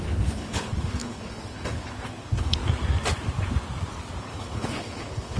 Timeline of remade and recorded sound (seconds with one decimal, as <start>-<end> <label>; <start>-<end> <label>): 0.0-2.6 remade; 2.6-4.2 recorded; 4.2-5.4 remade